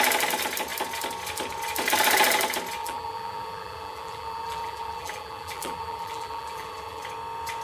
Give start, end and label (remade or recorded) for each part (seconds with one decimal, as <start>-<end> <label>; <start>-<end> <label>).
0.0-2.8 recorded; 2.8-7.0 remade; 7.0-7.6 recorded

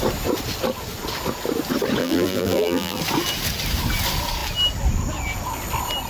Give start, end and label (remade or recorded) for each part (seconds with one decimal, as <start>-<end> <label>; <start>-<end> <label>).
0.0-2.0 recorded; 2.0-3.0 remade; 3.0-6.1 recorded

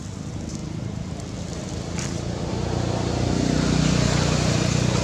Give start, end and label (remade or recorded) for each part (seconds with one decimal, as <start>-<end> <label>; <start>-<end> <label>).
0.0-0.6 recorded; 0.6-2.5 remade; 2.5-5.0 recorded

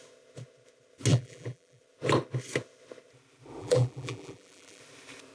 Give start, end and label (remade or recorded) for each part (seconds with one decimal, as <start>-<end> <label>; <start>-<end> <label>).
0.0-1.1 recorded; 1.1-1.8 remade; 1.8-3.6 recorded; 3.6-4.8 remade; 4.8-5.3 recorded

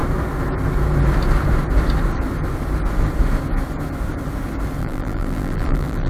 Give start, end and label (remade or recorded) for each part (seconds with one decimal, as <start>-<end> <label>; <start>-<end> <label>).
0.0-4.8 recorded; 4.8-6.1 remade

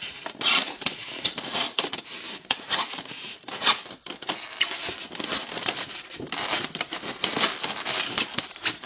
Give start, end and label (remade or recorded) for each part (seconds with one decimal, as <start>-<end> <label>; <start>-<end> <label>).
0.0-4.8 remade; 4.8-5.4 recorded; 5.4-7.5 remade; 7.5-8.4 recorded; 8.4-8.9 remade

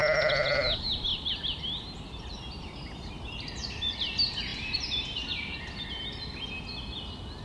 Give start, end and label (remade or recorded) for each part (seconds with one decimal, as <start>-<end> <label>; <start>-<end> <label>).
0.0-1.1 recorded; 1.1-2.2 remade; 2.2-4.5 recorded; 4.5-5.6 remade; 5.6-7.4 recorded